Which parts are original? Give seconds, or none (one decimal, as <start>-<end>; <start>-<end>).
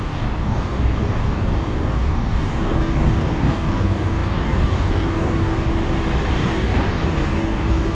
5.7-6.3